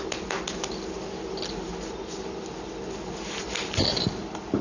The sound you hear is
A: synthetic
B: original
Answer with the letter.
B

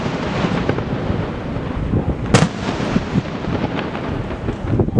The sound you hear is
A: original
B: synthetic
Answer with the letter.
A